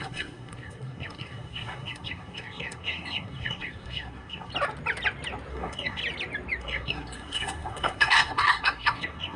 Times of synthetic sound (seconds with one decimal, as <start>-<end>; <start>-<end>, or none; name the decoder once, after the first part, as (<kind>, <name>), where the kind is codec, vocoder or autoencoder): 0.0-4.5 (codec, SNAC); 5.5-6.0; 6.6-9.4